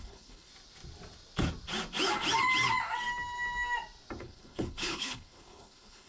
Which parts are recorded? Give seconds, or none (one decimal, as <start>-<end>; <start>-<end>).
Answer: 0.5-4.2